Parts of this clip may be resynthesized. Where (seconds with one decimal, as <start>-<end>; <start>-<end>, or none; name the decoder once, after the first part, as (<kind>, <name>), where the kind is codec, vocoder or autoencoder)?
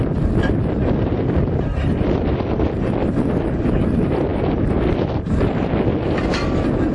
none